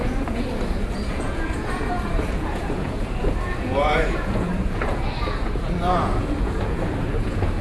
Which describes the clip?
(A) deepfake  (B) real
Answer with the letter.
A